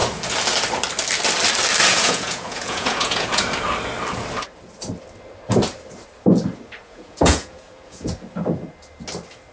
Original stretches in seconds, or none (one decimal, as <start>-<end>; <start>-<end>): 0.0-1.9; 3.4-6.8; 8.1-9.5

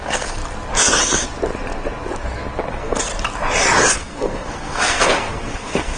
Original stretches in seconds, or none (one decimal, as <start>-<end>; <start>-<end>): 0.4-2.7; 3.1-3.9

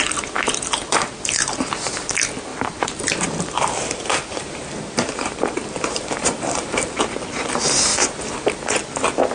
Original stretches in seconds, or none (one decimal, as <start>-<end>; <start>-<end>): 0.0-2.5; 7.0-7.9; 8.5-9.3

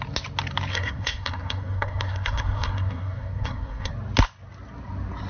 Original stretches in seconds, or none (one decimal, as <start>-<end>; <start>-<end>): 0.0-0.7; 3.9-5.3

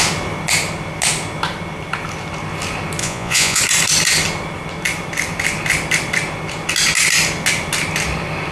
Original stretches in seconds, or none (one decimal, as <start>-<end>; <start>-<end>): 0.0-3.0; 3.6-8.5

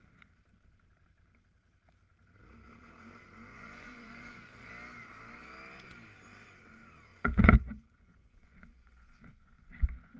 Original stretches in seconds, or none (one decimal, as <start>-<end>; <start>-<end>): 0.0-3.5; 4.7-7.1

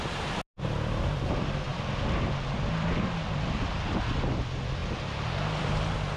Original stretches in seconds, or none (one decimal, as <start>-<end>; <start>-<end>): 0.0-6.2

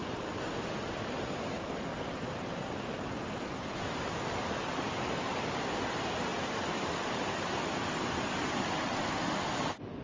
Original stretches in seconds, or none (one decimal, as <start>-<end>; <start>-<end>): 0.0-1.9; 3.8-10.0